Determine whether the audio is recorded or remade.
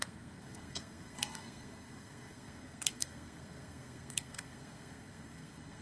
remade